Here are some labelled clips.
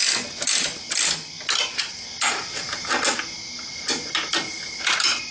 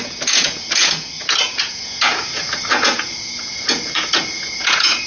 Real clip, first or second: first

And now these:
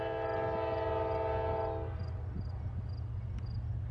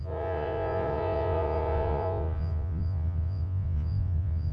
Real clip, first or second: first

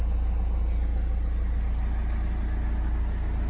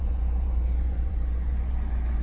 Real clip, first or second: first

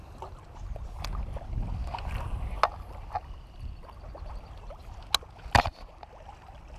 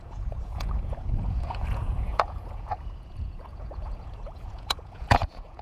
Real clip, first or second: first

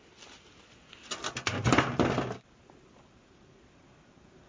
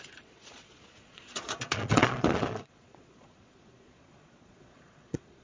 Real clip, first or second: first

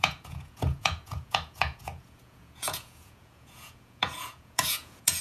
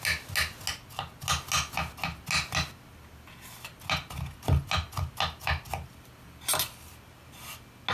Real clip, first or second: second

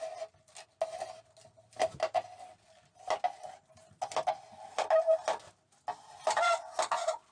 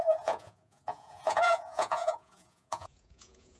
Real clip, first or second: first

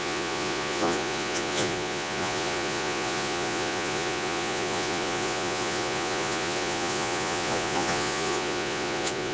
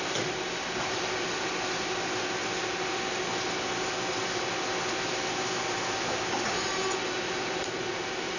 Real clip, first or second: second